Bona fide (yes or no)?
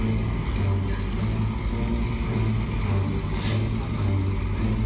yes